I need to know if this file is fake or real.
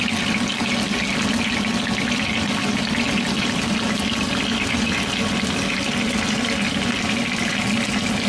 real